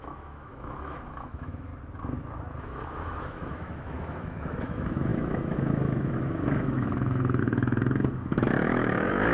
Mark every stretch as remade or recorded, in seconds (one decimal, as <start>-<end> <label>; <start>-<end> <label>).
0.0-1.7 remade; 1.7-2.6 recorded; 2.6-9.3 remade